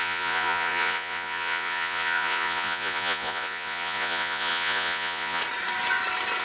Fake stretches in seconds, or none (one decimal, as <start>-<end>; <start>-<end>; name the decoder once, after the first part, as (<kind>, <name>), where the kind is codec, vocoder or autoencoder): 0.0-5.4 (vocoder, Vocos)